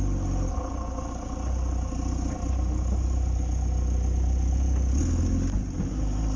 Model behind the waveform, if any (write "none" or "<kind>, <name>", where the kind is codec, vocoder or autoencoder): none